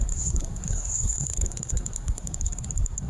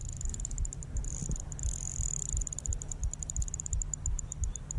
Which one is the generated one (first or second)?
first